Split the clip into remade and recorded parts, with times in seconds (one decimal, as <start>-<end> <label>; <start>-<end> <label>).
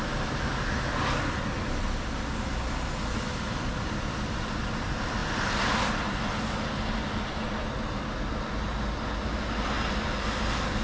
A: 0.0-10.8 recorded